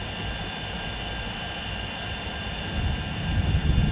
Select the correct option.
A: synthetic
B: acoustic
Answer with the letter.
B